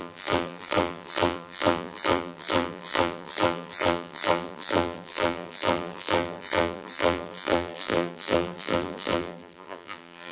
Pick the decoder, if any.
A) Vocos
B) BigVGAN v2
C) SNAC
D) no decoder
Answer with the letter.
B